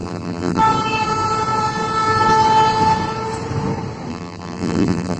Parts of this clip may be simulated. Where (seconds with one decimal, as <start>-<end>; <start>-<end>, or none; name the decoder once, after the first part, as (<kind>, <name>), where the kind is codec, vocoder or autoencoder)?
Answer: 0.0-0.6 (vocoder, BigVGAN v2); 4.1-5.2

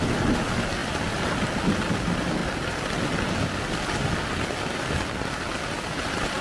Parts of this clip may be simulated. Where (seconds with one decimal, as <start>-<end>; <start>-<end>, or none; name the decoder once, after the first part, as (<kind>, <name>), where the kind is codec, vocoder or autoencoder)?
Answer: 0.8-1.4 (vocoder, BigVGAN v2)

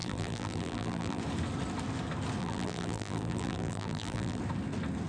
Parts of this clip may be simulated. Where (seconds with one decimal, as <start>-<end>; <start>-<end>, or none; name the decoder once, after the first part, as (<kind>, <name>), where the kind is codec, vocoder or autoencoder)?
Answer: 0.0-1.2 (vocoder, BigVGAN v2); 2.4-4.4

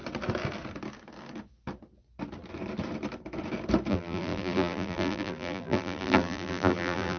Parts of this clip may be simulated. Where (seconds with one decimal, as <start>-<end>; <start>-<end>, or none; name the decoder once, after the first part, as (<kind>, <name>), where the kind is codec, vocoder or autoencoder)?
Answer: 3.9-7.2 (vocoder, BigVGAN v2)